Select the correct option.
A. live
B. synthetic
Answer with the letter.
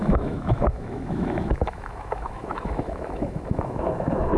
B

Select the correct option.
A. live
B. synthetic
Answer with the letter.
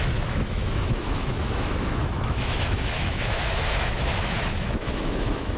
B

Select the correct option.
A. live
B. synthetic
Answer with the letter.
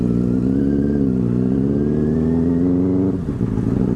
A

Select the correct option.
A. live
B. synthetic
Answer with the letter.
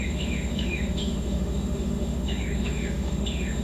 B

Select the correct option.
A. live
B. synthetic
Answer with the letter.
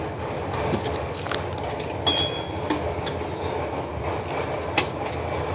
A